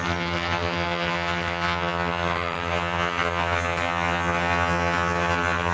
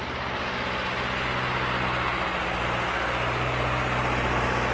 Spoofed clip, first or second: first